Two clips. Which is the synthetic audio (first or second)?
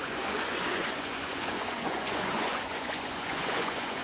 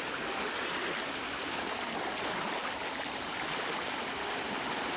first